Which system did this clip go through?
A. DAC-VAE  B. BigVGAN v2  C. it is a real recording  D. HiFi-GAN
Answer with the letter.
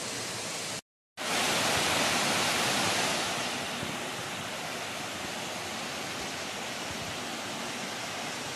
C